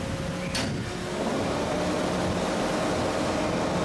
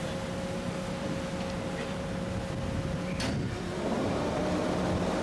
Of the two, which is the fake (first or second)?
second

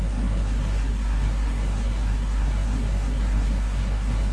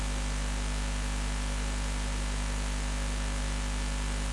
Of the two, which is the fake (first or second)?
first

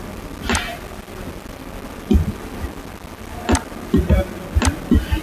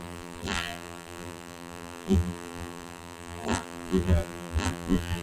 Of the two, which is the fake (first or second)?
second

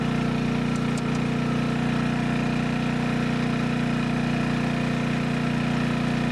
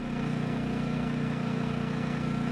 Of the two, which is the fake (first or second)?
second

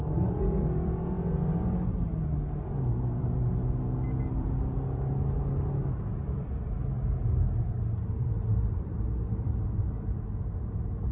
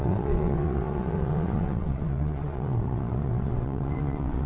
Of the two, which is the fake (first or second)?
second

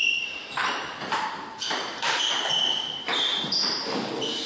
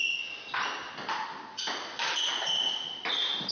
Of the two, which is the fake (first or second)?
first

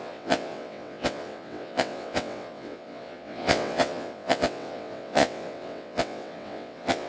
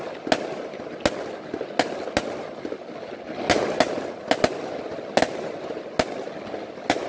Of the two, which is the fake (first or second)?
first